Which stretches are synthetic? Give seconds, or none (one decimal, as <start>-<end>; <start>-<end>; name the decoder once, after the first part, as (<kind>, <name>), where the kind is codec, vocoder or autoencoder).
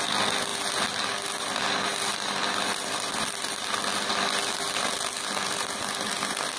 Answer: none